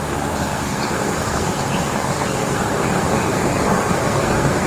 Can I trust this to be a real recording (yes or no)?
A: no